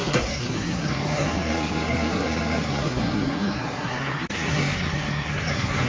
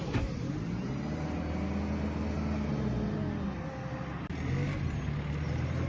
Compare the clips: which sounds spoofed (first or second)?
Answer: first